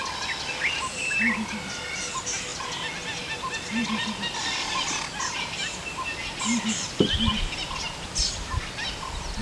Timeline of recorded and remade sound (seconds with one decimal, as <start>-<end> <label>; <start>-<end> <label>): 0.0-9.4 recorded